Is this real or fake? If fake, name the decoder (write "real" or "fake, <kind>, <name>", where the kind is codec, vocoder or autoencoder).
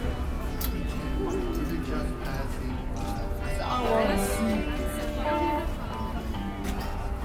real